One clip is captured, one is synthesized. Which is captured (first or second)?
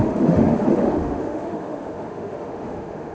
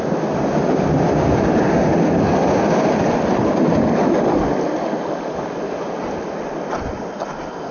second